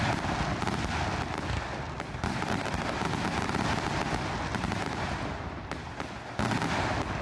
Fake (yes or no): no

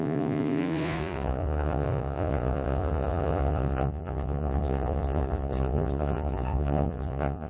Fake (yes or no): yes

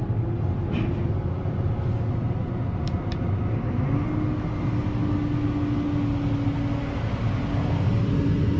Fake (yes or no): no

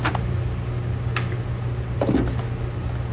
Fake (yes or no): no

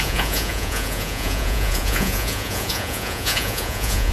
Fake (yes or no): yes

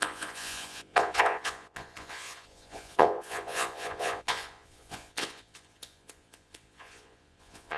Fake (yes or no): yes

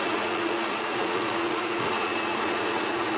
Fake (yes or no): yes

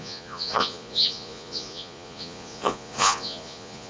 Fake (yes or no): yes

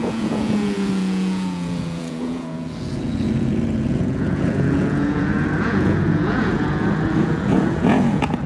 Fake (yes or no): yes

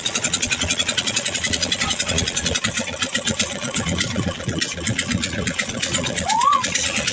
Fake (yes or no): yes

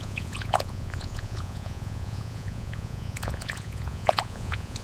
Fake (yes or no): yes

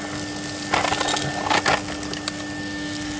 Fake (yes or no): no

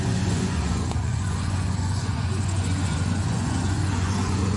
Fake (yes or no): yes